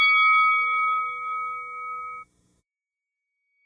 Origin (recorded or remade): remade